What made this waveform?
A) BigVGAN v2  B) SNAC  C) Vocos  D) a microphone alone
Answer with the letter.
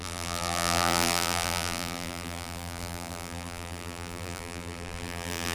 A